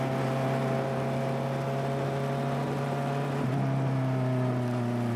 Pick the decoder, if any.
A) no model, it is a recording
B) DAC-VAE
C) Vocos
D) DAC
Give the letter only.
A